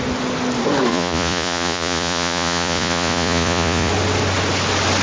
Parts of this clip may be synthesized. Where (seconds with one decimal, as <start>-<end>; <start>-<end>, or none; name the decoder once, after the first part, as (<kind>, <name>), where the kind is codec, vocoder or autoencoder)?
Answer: 0.9-3.9 (vocoder, Vocos)